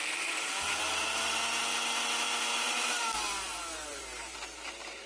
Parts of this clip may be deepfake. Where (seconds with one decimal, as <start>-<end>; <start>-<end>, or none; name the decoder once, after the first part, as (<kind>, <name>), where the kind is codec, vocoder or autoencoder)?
0.0-1.4 (vocoder, BigVGAN v2); 2.5-5.1